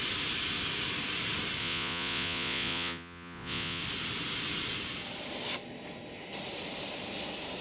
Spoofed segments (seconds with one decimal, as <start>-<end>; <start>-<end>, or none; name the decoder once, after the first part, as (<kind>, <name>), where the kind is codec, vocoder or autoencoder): 1.6-3.8 (vocoder, Vocos)